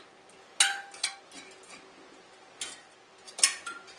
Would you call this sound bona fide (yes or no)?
yes